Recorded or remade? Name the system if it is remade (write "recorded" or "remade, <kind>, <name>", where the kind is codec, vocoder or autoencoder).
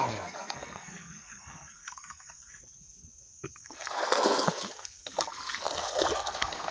remade, codec, SNAC